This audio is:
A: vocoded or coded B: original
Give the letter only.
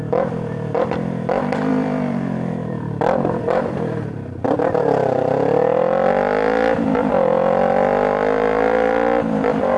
A